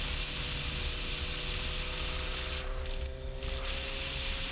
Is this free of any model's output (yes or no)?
yes